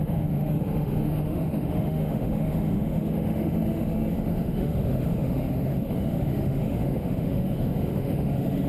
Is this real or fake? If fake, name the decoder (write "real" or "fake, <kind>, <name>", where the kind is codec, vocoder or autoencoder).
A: fake, autoencoder, DAC-VAE